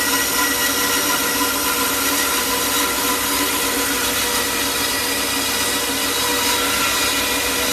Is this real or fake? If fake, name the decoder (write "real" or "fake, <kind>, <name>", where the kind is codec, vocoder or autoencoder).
real